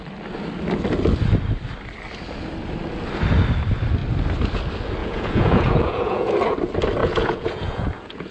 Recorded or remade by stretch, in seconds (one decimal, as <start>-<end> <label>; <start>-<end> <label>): 0.0-5.0 recorded; 5.0-6.3 remade; 6.3-7.0 recorded; 7.0-8.3 remade